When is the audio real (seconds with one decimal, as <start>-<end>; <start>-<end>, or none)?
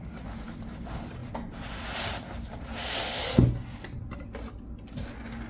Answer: 0.0-5.5